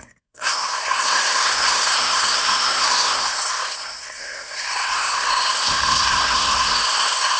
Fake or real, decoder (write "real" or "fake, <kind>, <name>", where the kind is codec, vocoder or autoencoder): fake, codec, SNAC